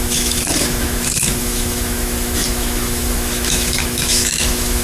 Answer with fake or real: fake